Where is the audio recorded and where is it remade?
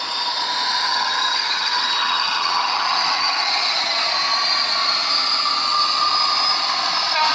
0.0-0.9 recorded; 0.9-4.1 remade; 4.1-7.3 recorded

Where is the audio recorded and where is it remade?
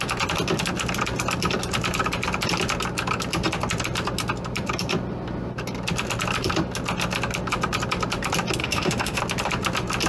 0.0-8.6 recorded; 8.6-9.2 remade; 9.2-10.1 recorded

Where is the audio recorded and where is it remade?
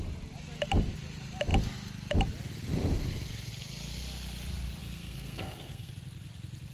0.0-4.8 recorded; 4.8-5.9 remade; 5.9-6.7 recorded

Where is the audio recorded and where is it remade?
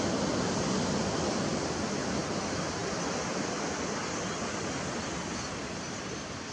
0.0-6.5 recorded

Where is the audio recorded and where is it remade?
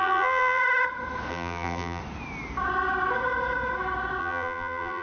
0.0-0.6 remade; 0.6-1.3 recorded; 1.3-2.0 remade; 2.0-4.2 recorded; 4.2-5.0 remade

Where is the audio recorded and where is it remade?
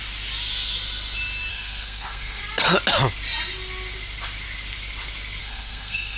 0.0-1.5 recorded; 1.5-2.4 remade; 2.4-5.4 recorded; 5.4-6.2 remade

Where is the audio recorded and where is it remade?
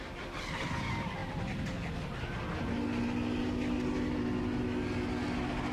0.0-5.7 recorded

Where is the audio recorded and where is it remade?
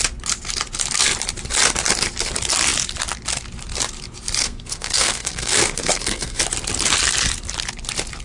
0.0-4.4 recorded; 4.4-6.4 remade; 6.4-8.2 recorded